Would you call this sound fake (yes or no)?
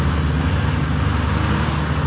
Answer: no